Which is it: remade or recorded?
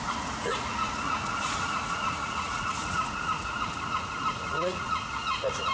remade